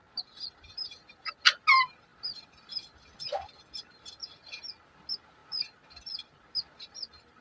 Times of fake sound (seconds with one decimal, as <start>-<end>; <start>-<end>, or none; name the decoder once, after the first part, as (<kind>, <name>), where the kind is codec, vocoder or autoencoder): none